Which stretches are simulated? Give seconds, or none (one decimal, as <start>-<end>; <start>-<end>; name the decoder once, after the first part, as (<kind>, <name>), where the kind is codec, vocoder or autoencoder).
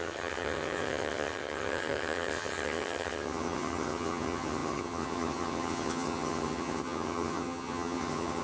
0.0-8.4 (vocoder, HiFi-GAN)